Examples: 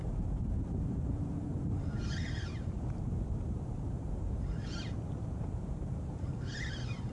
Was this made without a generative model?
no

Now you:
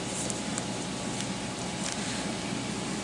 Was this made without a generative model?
yes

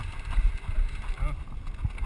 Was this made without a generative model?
yes